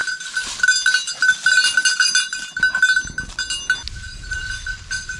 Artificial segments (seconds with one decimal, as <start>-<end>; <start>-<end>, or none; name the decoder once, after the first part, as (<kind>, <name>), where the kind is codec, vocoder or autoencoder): none